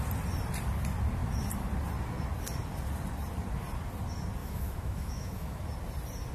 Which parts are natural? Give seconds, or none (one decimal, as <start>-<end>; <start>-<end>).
0.0-4.4; 5.6-6.3